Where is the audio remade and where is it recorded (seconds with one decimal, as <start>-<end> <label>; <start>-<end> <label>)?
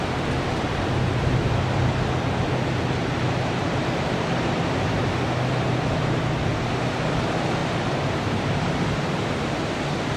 0.0-3.0 recorded; 3.0-5.1 remade; 5.1-7.6 recorded; 7.6-8.7 remade; 8.7-10.2 recorded